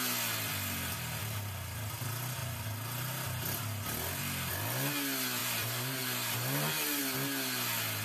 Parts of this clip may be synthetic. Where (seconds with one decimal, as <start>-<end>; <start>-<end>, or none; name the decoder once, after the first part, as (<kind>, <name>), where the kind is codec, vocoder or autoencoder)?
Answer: 5.4-7.0 (vocoder, BigVGAN v2)